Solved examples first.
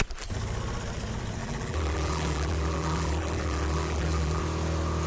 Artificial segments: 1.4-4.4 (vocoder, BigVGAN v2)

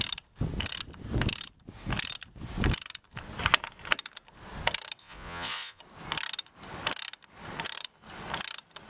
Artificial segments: 5.0-5.8 (vocoder, Vocos)

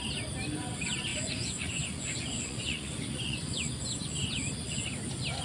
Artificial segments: 1.1-4.3 (vocoder, Vocos)

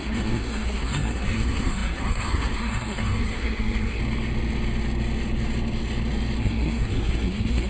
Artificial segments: 0.0-4.0 (codec, SNAC); 6.4-7.7

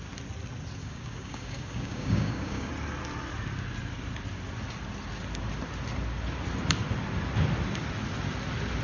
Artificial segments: 0.8-2.7 (codec, DAC)

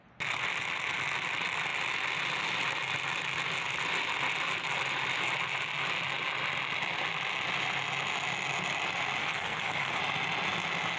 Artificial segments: 9.2-10.0 (codec, SNAC)